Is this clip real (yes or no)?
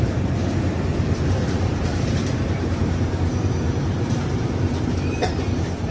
no